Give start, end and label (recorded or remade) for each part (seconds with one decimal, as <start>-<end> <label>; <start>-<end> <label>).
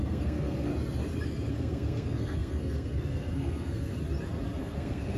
0.0-0.7 remade; 0.7-1.5 recorded; 1.5-3.9 remade; 3.9-4.6 recorded; 4.6-5.2 remade